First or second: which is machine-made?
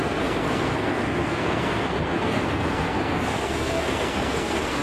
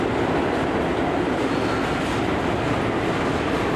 first